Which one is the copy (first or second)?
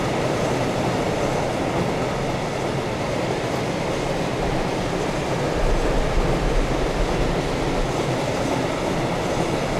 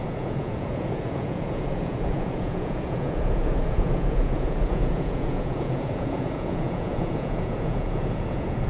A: second